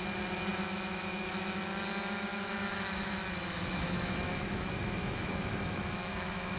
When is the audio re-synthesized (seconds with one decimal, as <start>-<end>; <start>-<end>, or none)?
0.5-1.6; 2.3-6.6